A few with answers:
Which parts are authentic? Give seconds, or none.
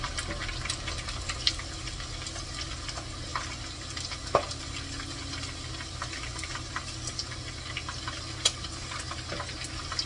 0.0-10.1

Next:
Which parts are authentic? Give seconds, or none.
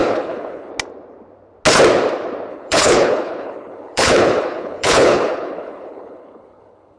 0.7-2.5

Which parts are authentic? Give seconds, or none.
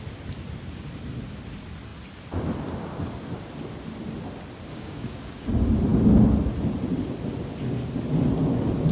0.0-4.7; 5.5-8.9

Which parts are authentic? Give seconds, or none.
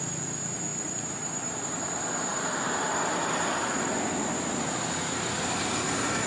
0.0-6.3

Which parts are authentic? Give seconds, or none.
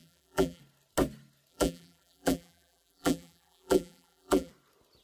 0.6-1.5; 4.5-5.0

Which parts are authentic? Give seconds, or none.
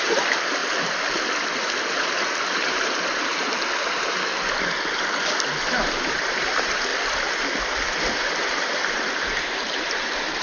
0.6-2.3; 4.3-6.1; 6.9-8.0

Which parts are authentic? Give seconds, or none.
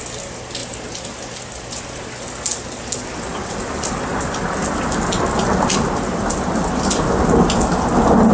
0.0-8.3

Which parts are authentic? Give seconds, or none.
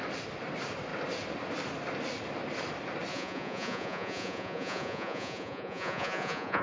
0.0-3.1